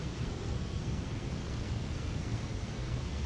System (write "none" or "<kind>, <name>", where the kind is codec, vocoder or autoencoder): codec, SNAC